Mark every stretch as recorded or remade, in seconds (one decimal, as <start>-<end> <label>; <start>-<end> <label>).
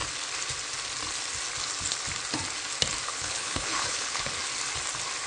0.0-3.1 recorded; 3.1-4.3 remade; 4.3-5.3 recorded